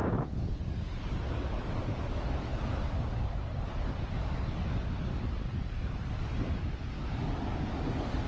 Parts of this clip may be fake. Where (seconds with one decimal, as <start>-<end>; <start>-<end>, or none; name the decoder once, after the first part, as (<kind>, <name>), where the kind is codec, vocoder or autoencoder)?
none